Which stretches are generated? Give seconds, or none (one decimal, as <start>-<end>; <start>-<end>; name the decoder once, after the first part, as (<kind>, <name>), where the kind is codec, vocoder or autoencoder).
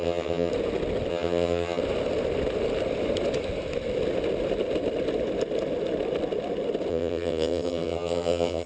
0.0-0.5 (vocoder, HiFi-GAN); 1.1-1.8; 6.9-8.7